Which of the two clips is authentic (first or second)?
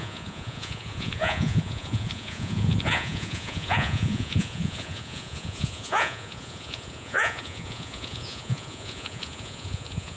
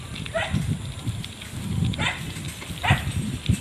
second